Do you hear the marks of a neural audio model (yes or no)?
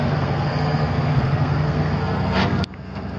yes